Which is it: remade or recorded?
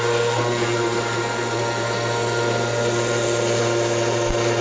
recorded